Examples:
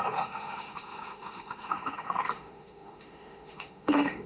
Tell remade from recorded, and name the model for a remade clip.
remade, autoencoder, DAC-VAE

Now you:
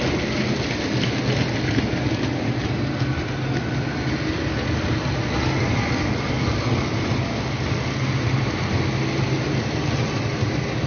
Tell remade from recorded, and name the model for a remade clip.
recorded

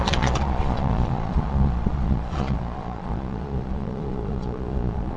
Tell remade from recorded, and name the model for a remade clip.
remade, vocoder, Vocos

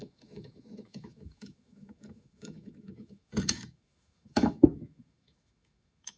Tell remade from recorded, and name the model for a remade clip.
remade, autoencoder, DAC-VAE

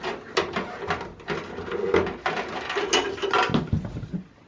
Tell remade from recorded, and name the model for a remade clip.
recorded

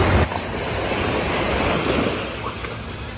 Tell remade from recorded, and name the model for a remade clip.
recorded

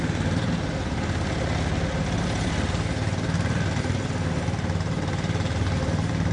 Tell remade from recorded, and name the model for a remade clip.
recorded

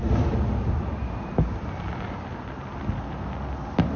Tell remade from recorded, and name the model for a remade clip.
recorded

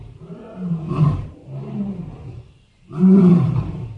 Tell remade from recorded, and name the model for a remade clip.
remade, vocoder, BigVGAN v2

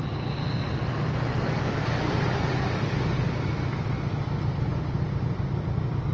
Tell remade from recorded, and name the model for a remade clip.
recorded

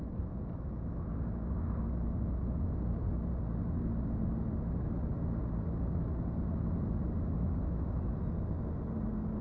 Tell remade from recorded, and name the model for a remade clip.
recorded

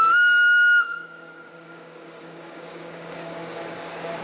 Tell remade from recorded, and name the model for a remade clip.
remade, codec, DAC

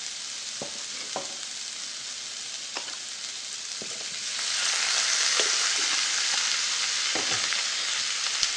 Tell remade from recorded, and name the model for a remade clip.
recorded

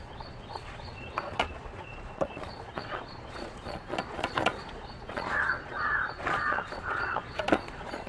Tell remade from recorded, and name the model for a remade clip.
remade, vocoder, Vocos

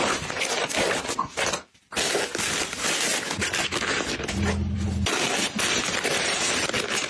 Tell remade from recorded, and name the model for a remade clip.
recorded